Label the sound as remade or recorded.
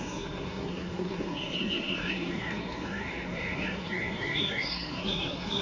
remade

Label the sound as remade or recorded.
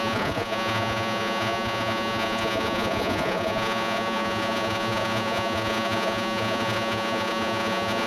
remade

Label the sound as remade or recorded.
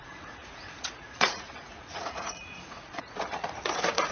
remade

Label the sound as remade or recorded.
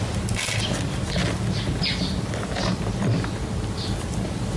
recorded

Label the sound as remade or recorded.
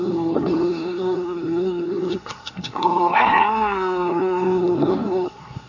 remade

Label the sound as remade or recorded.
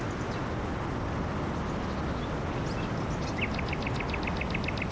recorded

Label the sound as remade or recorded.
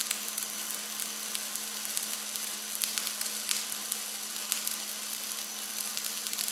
recorded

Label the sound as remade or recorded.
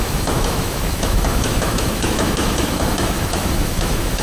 remade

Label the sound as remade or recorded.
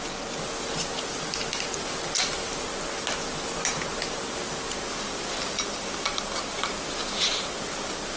recorded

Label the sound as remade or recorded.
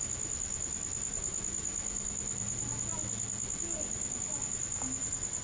recorded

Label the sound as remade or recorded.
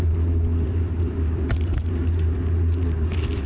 recorded